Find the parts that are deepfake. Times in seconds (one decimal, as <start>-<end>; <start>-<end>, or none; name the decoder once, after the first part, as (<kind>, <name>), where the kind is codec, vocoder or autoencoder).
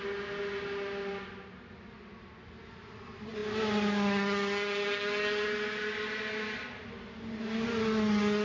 none